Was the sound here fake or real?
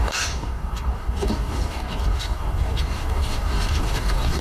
fake